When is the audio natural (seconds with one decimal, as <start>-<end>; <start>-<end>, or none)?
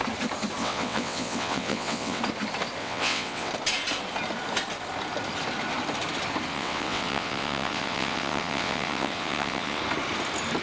0.0-0.6; 2.2-2.8; 3.5-6.5; 9.8-10.6